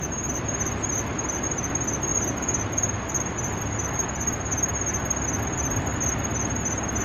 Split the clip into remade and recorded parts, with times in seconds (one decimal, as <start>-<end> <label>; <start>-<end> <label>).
0.0-7.0 recorded